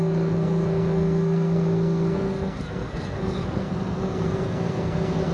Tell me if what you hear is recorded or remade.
remade